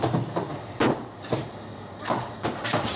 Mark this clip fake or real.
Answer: fake